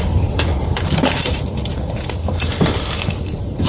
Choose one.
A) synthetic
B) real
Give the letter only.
A